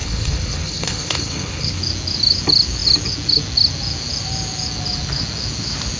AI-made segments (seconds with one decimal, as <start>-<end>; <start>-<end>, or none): 0.0-1.8